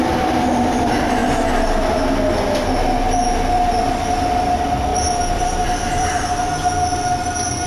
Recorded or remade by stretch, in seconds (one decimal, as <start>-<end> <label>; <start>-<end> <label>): 0.0-4.9 recorded; 4.9-6.3 remade; 6.3-7.7 recorded